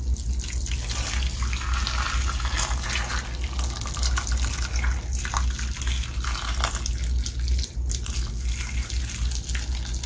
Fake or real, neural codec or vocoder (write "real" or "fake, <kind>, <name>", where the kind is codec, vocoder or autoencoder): real